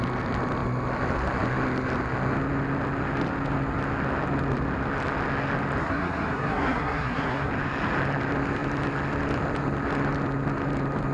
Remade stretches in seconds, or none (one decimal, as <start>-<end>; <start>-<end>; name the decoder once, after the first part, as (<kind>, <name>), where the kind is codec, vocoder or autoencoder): 5.8-7.5 (codec, SNAC)

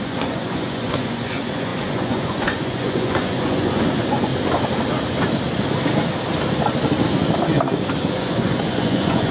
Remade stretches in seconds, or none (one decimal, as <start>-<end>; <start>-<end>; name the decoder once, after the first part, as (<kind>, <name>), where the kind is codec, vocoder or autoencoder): 0.0-4.3 (vocoder, Vocos); 8.1-9.3

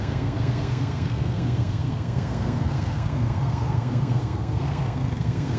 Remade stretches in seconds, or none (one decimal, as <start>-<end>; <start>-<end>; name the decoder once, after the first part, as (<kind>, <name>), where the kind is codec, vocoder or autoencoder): 0.0-5.6 (codec, SNAC)

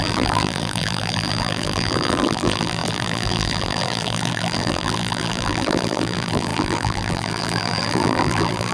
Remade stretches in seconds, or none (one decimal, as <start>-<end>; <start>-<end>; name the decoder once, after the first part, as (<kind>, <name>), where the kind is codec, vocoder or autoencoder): 0.0-8.7 (vocoder, BigVGAN v2)

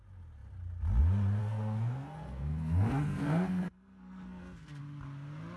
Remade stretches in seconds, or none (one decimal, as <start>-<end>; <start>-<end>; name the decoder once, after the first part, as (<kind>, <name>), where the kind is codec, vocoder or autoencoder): 1.4-4.8 (codec, SNAC)